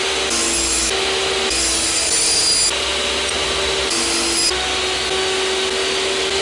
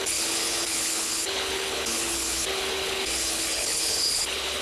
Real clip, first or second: first